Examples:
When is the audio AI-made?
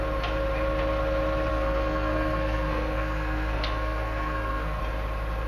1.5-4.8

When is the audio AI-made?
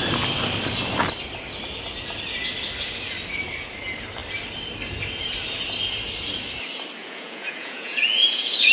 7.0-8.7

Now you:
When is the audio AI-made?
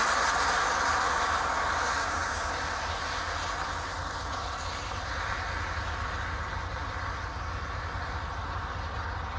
2.0-2.5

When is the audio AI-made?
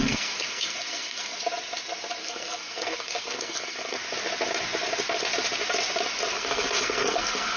0.0-1.4; 2.2-4.0; 6.3-7.6